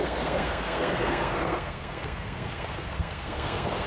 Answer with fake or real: fake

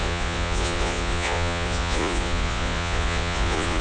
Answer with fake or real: fake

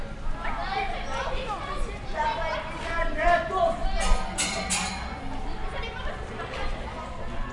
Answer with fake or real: real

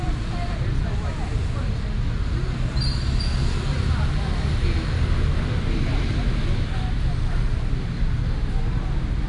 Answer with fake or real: real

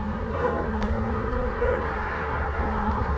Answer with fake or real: fake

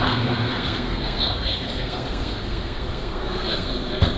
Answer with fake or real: fake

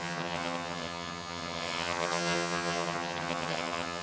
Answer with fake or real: fake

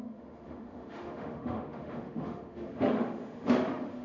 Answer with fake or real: fake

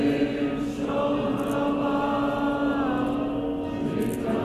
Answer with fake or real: real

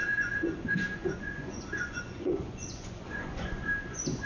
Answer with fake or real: fake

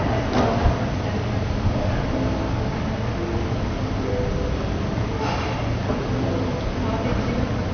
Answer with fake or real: real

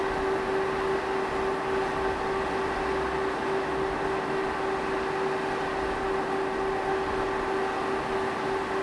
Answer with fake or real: real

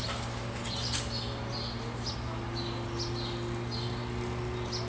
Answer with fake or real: real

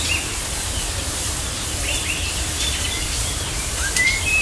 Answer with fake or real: fake